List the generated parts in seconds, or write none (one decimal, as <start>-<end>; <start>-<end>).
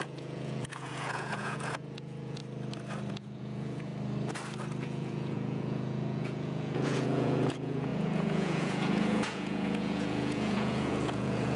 0.0-2.4; 3.1-3.9; 4.8-11.6